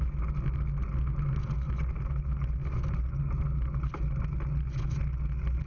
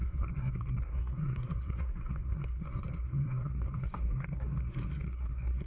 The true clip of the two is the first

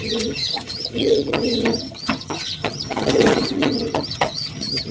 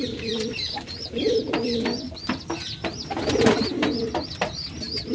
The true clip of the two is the second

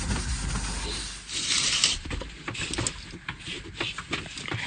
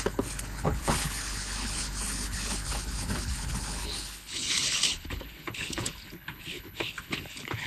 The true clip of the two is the first